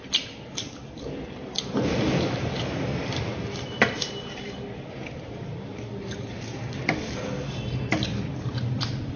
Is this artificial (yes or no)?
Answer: yes